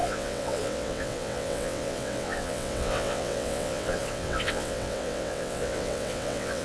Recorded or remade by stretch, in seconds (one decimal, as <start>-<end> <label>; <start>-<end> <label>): 0.0-6.6 remade